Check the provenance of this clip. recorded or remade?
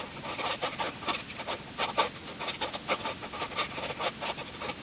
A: recorded